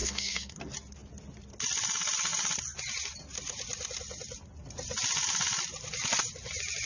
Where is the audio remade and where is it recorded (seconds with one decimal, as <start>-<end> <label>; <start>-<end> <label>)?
0.0-0.6 remade; 0.6-6.9 recorded